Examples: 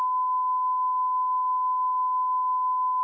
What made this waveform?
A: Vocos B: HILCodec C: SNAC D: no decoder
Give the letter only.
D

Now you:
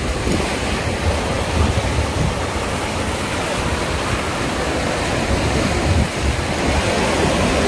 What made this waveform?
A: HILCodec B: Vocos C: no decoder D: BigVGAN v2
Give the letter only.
C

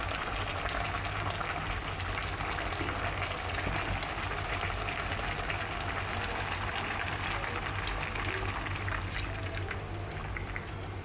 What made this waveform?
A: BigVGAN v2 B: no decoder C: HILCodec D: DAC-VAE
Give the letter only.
B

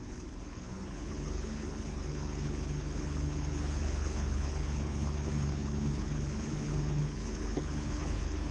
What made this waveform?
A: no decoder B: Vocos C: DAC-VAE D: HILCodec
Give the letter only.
D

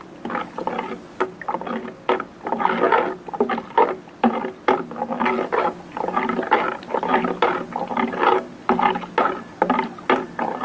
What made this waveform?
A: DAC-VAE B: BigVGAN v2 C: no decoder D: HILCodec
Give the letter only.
C